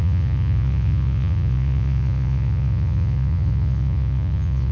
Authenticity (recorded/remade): remade